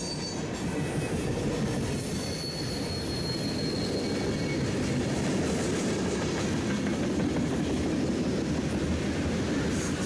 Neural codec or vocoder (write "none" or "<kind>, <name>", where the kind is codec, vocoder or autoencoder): none